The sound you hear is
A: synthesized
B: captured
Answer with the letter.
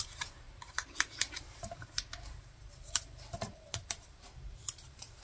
A